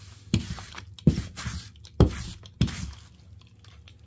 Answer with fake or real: real